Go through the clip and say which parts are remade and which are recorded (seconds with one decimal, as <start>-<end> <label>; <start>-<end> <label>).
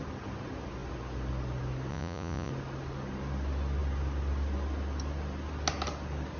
0.0-1.9 recorded; 1.9-2.5 remade; 2.5-6.4 recorded